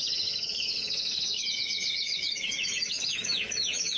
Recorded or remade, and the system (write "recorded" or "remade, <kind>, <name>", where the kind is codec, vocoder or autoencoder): remade, autoencoder, DAC-VAE